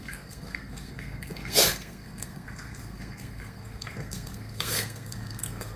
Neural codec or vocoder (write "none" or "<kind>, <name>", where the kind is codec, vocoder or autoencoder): codec, SNAC